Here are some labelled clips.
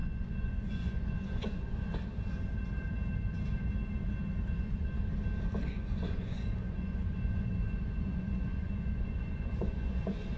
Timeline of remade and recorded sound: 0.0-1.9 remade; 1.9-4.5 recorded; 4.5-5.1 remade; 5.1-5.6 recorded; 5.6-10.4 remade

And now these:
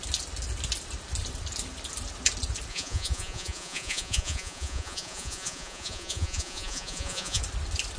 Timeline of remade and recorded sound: 0.0-2.7 recorded; 2.7-7.4 remade; 7.4-8.0 recorded

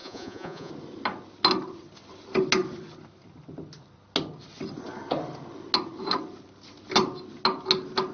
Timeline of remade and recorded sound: 0.0-0.7 remade; 0.7-8.1 recorded

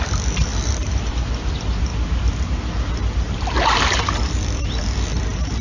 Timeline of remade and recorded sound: 0.0-5.6 recorded